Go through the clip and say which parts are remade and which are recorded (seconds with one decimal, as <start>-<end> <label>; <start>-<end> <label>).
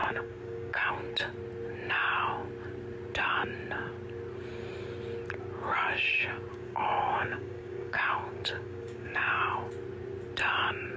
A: 0.0-0.9 remade; 0.9-6.5 recorded; 6.5-9.4 remade; 9.4-11.0 recorded